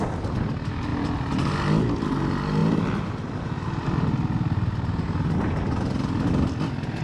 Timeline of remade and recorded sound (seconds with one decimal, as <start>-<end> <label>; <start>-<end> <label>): 0.0-7.0 recorded